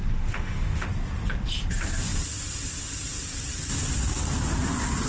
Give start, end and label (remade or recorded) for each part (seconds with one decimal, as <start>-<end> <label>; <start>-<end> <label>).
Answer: 0.0-0.9 remade; 0.9-5.1 recorded